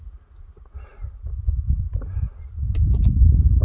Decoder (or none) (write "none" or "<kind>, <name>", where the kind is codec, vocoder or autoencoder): none